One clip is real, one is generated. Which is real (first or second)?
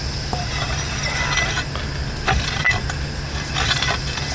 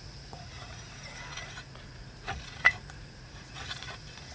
first